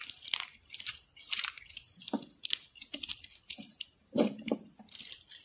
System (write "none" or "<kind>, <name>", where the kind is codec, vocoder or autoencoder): vocoder, BigVGAN v2